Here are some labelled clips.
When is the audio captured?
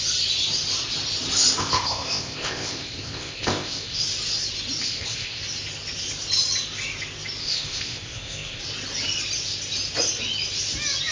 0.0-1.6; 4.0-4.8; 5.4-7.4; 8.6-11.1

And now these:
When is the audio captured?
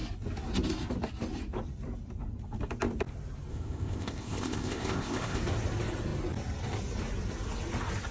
0.0-3.5; 5.4-8.1